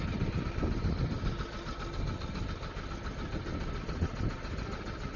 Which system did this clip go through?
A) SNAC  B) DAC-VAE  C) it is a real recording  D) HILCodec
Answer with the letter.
C